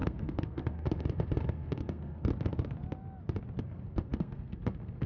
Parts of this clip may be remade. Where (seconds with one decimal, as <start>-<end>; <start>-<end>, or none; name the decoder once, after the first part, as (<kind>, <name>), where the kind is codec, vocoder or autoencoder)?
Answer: 0.0-2.3 (codec, SNAC); 3.6-5.1